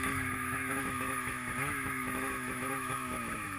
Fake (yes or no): yes